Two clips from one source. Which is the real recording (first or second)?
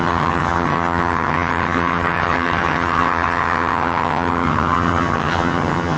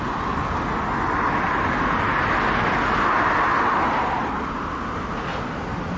second